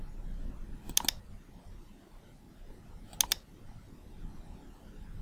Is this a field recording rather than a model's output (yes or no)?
yes